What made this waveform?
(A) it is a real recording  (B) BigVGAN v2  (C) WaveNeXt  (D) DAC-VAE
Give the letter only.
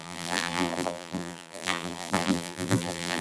B